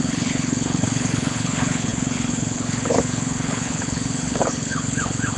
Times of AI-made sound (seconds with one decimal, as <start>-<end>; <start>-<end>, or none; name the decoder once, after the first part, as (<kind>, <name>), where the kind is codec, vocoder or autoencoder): 0.0-5.4 (codec, HILCodec)